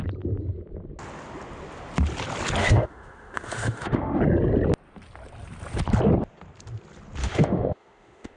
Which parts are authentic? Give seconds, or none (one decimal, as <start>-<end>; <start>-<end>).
0.0-2.6; 4.2-7.2